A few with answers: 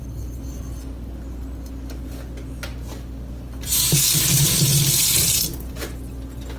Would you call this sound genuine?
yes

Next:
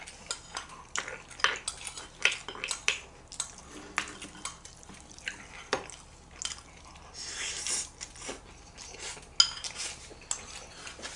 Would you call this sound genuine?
yes